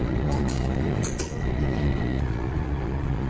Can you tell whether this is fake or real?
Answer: fake